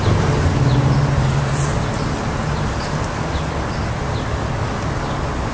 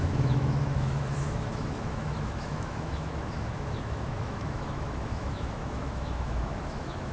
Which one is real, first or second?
first